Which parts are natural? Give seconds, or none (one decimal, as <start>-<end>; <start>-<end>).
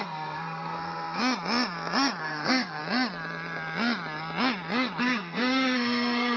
1.2-2.2; 2.8-5.0